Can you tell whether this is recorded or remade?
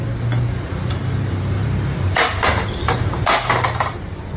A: remade